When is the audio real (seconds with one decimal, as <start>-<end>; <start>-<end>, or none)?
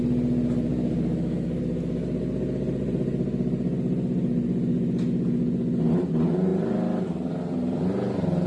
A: 0.0-0.7; 1.6-8.5